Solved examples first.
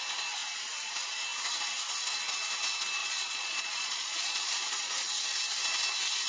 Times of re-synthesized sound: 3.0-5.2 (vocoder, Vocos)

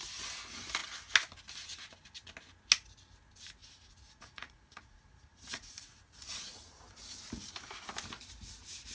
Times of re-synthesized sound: 3.6-6.8 (vocoder, Vocos)

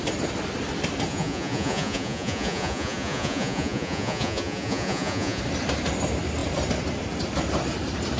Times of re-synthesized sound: 1.1-5.4 (vocoder, Vocos)

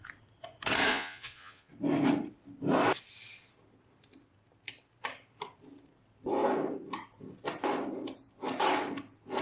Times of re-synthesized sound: 0.9-1.7 (vocoder, Vocos)

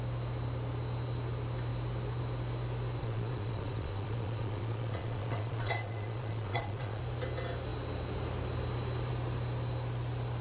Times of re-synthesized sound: 3.0-7.0 (vocoder, Vocos)

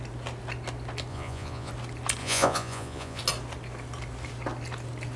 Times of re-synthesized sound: 1.1-1.7 (vocoder, Vocos); 2.2-3.2

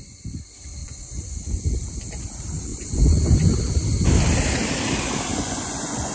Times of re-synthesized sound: 0.8-1.6 (vocoder, Vocos); 2.7-3.5; 5.3-6.1